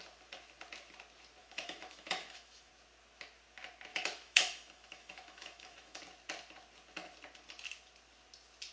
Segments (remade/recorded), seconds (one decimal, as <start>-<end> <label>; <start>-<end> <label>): 0.0-1.4 recorded; 1.4-2.7 remade; 2.7-3.9 recorded; 3.9-6.0 remade; 6.0-8.7 recorded